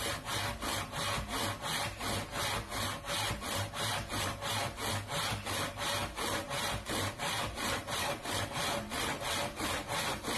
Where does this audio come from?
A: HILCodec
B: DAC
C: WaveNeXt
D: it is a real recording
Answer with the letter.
D